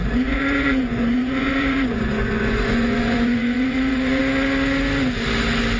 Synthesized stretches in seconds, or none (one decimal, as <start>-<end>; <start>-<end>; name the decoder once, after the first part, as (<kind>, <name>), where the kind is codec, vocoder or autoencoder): 0.0-4.2 (vocoder, Vocos)